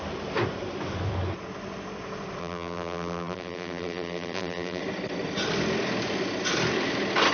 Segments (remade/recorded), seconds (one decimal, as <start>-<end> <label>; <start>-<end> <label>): 0.0-2.4 recorded; 2.4-4.8 remade; 4.8-7.3 recorded

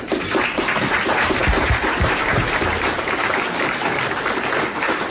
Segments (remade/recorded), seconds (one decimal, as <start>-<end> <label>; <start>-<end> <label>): 0.0-5.1 remade

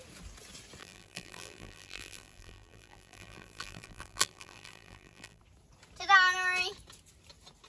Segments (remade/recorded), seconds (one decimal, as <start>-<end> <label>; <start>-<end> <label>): 0.0-0.8 recorded; 0.8-5.4 remade; 5.4-7.7 recorded

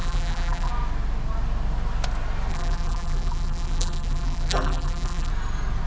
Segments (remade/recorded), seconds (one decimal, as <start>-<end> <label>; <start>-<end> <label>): 0.0-0.7 remade; 0.7-2.5 recorded; 2.5-5.3 remade; 5.3-5.9 recorded

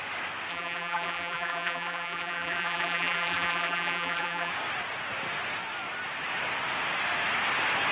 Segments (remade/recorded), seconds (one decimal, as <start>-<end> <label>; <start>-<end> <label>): 0.0-0.5 recorded; 0.5-4.5 remade; 4.5-7.9 recorded